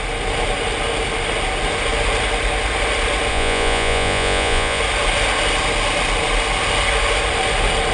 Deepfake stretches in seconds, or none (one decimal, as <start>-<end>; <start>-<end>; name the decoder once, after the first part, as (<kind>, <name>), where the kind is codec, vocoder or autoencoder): 3.3-4.8 (vocoder, Vocos)